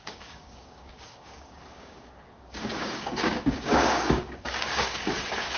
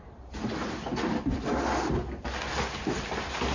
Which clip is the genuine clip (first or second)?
second